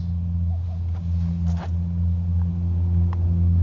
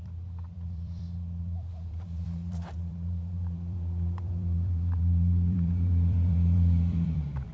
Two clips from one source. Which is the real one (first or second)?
first